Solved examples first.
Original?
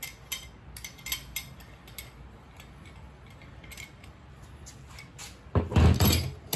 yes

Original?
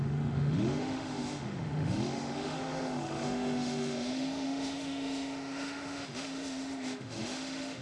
no